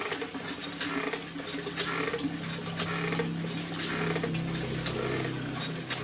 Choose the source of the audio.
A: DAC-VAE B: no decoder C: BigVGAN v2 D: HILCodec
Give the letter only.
B